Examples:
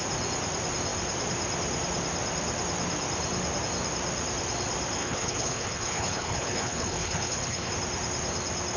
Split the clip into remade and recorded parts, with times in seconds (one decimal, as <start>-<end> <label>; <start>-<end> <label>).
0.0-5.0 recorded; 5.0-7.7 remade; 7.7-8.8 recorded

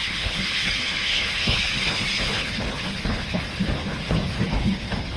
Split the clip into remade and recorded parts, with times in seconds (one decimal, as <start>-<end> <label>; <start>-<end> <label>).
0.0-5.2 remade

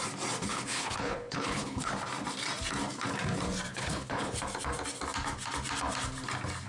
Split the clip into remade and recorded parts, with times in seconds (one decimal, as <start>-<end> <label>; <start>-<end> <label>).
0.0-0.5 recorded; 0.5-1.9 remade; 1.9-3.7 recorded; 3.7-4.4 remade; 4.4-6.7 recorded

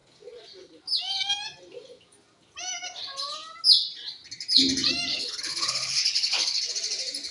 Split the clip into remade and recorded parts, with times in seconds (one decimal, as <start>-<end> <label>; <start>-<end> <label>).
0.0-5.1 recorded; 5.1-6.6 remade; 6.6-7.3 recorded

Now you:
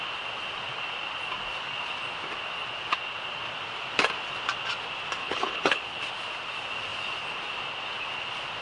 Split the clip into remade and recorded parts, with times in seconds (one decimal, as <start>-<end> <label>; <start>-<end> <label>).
0.0-5.2 recorded; 5.2-6.0 remade; 6.0-8.6 recorded

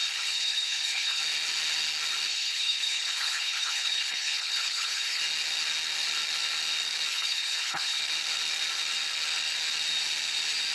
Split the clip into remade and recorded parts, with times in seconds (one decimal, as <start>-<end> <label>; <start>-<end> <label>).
0.0-1.2 remade; 1.2-2.3 recorded; 2.3-5.2 remade; 5.2-7.1 recorded; 7.1-8.0 remade; 8.0-10.7 recorded